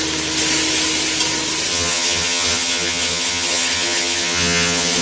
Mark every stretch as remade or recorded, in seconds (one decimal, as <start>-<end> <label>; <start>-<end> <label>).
0.0-1.7 recorded; 1.7-5.0 remade